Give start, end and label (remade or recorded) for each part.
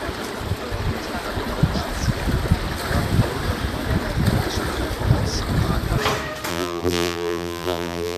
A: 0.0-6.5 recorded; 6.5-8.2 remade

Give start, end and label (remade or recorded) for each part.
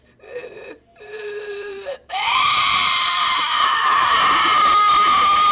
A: 0.0-0.9 recorded; 0.9-4.2 remade; 4.2-5.5 recorded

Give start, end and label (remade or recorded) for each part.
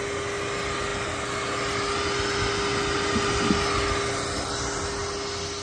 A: 0.0-5.6 recorded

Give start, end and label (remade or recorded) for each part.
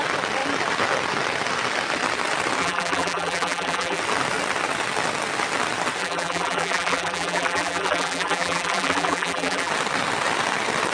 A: 0.0-2.6 recorded; 2.6-4.0 remade; 4.0-6.0 recorded; 6.0-9.7 remade; 9.7-10.9 recorded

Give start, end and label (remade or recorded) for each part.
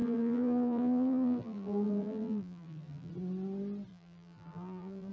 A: 0.0-3.1 remade; 3.1-3.9 recorded; 3.9-5.1 remade